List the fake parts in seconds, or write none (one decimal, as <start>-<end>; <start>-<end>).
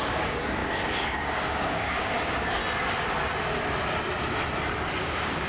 0.0-2.6; 5.0-5.5